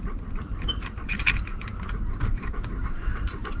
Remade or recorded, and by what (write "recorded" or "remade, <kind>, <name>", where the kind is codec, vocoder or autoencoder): recorded